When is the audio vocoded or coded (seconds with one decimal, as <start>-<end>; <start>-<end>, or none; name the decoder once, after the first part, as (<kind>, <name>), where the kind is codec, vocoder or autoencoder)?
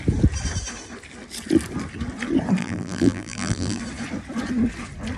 2.6-3.8 (vocoder, BigVGAN v2)